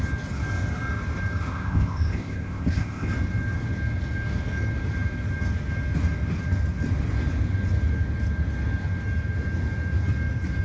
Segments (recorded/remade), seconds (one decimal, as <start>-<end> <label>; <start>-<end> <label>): 0.0-1.5 recorded; 1.5-3.1 remade; 3.1-10.6 recorded